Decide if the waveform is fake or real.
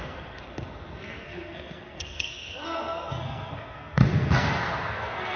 fake